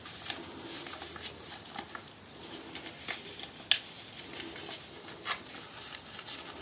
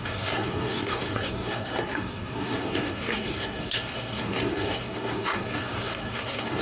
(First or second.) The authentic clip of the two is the first